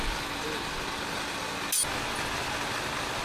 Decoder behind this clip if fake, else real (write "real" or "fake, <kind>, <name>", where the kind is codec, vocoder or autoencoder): real